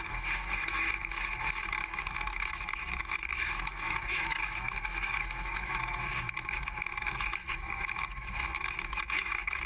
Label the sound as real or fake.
fake